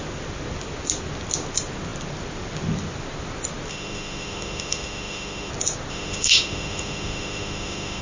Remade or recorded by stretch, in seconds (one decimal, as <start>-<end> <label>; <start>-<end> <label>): 0.0-3.7 recorded; 3.7-5.5 remade; 5.5-5.9 recorded; 5.9-8.0 remade

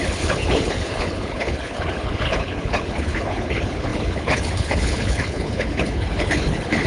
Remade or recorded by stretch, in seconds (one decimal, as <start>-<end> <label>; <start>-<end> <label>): 0.0-6.9 remade

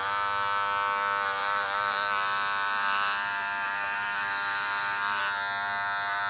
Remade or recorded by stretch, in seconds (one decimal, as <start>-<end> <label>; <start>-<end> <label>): 0.0-1.4 recorded; 1.4-5.2 remade; 5.2-6.3 recorded

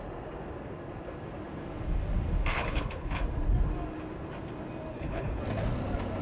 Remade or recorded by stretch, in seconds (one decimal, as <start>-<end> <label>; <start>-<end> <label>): 0.0-2.5 recorded; 2.5-3.2 remade; 3.2-4.9 recorded; 4.9-5.4 remade; 5.4-6.2 recorded